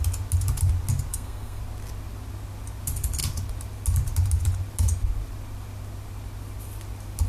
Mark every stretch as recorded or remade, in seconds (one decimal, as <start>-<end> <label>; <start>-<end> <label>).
0.0-1.1 recorded; 1.1-1.6 remade; 1.6-7.3 recorded